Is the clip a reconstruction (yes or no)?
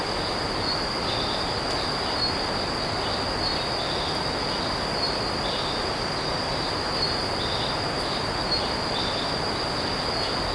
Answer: no